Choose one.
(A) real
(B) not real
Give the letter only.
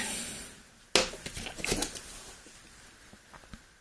A